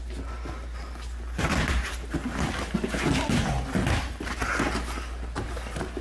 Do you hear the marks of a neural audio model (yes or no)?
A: no